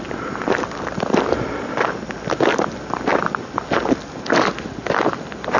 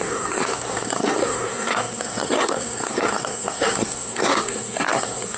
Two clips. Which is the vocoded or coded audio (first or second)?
second